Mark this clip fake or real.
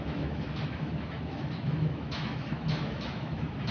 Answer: fake